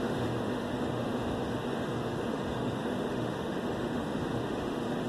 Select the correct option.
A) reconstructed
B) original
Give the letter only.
A